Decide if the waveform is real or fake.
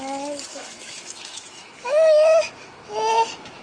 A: fake